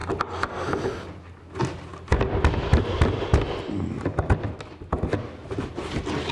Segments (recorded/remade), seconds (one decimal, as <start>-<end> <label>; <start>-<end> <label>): 0.0-6.3 recorded